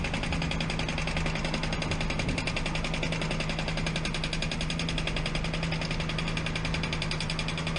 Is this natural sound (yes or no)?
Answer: yes